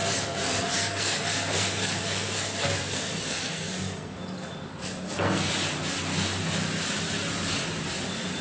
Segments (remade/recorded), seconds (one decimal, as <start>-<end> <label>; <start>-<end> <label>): 0.0-4.2 remade; 4.2-4.7 recorded; 4.7-5.5 remade; 5.5-8.4 recorded